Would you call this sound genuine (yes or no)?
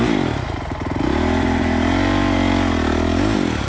yes